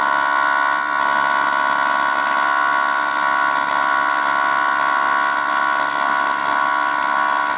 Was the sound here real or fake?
real